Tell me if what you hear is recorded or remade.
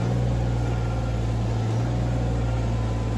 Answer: recorded